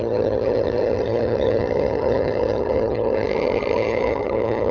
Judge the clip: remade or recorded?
remade